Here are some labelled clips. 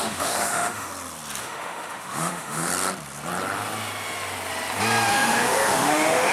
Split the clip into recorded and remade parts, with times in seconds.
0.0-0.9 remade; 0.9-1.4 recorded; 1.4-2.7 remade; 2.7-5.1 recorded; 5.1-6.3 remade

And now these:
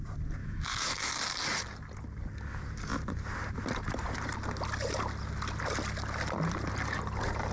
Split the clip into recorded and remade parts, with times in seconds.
0.0-0.4 recorded; 0.4-1.1 remade; 1.1-7.5 recorded